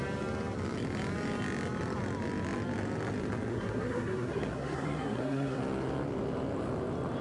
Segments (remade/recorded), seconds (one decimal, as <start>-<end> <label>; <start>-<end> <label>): 0.0-3.5 recorded; 3.5-5.6 remade; 5.6-7.2 recorded